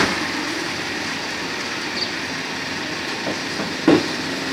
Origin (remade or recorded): recorded